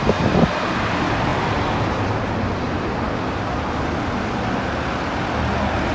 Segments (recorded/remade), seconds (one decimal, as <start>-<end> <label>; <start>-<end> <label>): 0.0-5.9 recorded